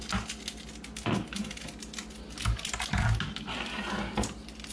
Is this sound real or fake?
real